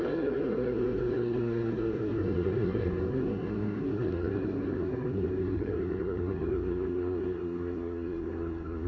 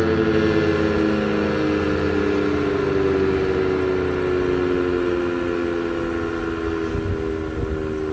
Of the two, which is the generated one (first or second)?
first